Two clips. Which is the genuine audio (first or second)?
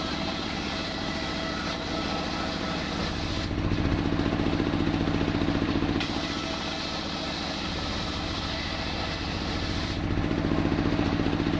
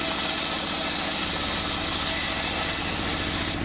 second